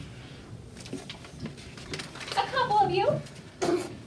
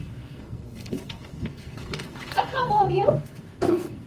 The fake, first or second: second